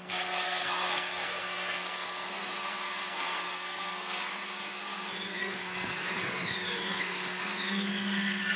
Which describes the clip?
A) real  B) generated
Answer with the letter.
B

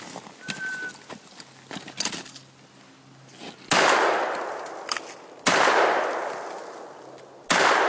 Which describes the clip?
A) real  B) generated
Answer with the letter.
A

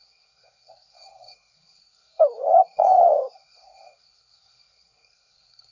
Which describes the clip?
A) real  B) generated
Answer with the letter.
B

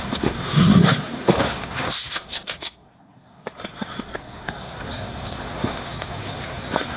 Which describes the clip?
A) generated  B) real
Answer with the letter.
A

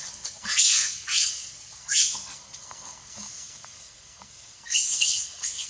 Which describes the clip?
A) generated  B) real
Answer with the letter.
A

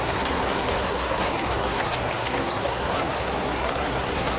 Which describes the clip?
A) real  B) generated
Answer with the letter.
B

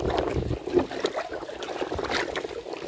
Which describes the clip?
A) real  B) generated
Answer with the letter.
A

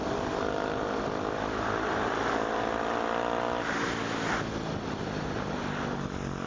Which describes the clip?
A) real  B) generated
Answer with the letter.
A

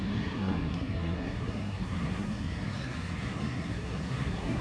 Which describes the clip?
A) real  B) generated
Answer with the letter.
B